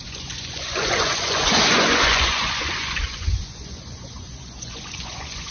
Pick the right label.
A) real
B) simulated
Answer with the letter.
B